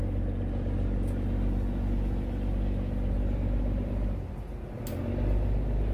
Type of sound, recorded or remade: recorded